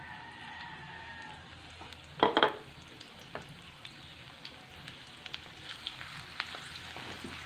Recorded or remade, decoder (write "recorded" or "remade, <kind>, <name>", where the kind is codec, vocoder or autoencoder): recorded